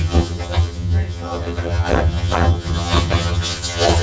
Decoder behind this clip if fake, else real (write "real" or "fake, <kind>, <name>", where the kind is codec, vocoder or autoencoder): fake, vocoder, HiFi-GAN